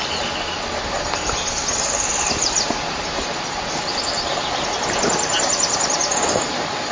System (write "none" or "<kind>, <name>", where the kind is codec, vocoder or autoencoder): none